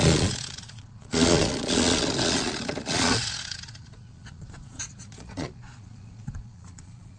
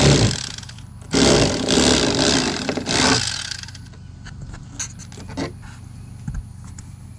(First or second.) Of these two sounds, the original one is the second